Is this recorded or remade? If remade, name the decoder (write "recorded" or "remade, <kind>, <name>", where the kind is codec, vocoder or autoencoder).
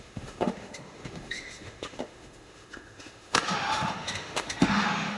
remade, autoencoder, DAC-VAE